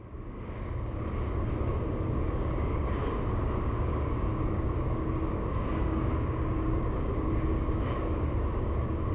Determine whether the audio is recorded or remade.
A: remade